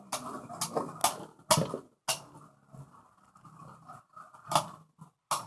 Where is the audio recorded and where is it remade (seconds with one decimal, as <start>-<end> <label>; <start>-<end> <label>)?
0.0-5.5 recorded